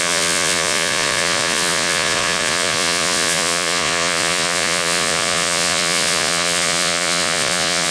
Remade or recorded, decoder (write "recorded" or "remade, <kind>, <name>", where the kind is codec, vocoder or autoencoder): remade, vocoder, Vocos